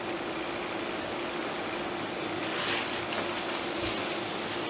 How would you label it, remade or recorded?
recorded